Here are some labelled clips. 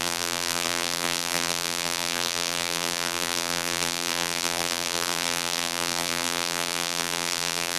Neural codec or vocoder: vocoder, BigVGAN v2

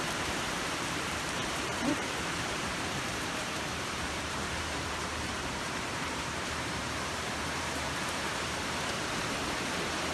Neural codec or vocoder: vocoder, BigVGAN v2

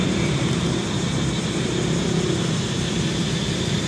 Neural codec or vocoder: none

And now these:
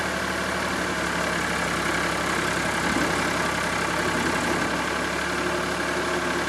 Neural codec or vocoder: none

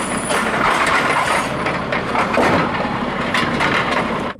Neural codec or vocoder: vocoder, BigVGAN v2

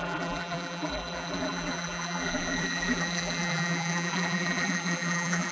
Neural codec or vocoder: vocoder, BigVGAN v2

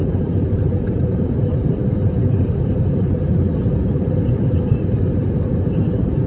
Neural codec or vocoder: vocoder, BigVGAN v2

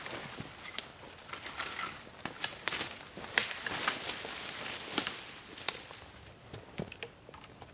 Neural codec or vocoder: none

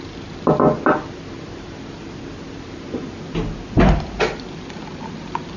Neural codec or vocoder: none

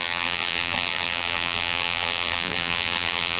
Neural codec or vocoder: vocoder, BigVGAN v2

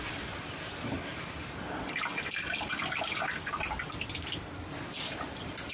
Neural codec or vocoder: none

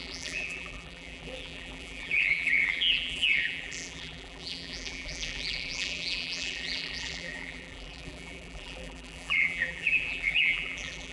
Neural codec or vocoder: vocoder, BigVGAN v2